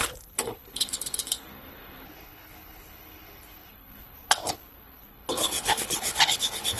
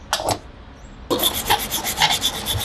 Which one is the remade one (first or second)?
first